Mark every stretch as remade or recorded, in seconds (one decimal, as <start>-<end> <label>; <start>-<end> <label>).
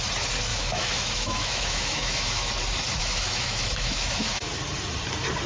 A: 0.0-0.5 recorded; 0.5-2.5 remade; 2.5-3.0 recorded; 3.0-4.5 remade; 4.5-5.5 recorded